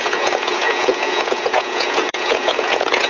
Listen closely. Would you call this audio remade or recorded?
remade